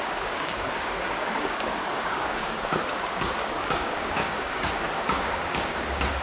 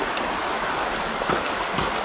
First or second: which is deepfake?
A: first